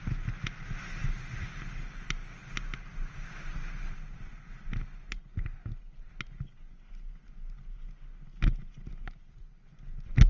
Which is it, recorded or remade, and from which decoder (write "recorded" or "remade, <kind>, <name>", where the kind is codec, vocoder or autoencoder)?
recorded